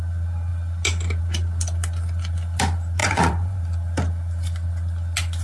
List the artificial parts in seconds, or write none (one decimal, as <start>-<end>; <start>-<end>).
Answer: 3.0-3.6